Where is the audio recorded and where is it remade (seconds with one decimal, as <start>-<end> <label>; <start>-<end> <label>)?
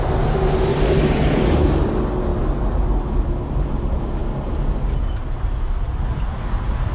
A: 0.0-0.7 recorded; 0.7-1.4 remade; 1.4-6.9 recorded